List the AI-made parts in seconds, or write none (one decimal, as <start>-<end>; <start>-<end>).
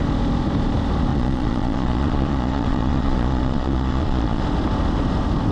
1.1-4.4